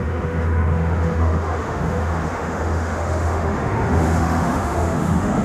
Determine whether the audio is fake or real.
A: fake